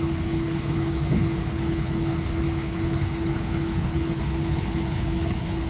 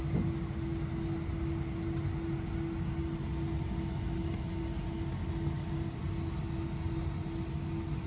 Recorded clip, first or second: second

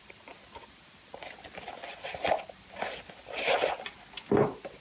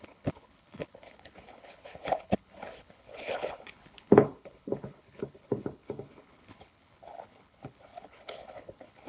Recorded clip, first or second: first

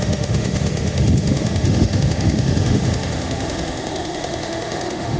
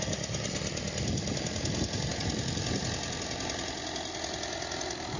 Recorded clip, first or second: second